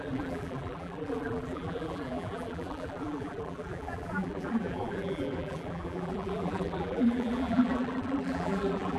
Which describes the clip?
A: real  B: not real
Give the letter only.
B